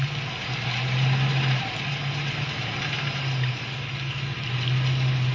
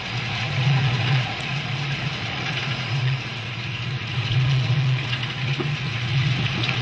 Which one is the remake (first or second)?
second